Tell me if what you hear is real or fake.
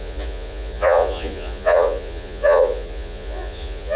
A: fake